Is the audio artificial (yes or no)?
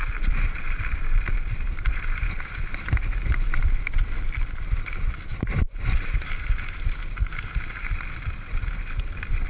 yes